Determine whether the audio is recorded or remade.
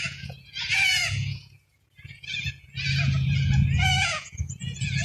remade